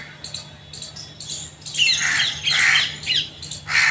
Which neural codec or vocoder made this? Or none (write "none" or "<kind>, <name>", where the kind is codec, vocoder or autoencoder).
none